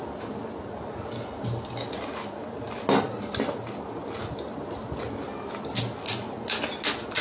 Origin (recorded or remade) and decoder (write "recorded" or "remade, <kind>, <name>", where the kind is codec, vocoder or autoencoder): recorded